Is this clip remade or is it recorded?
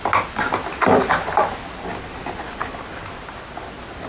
recorded